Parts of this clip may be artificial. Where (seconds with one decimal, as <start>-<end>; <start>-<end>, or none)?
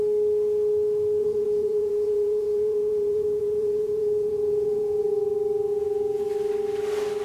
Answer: 1.2-5.1; 5.7-6.2